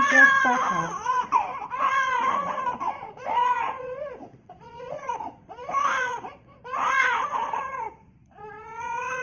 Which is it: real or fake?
fake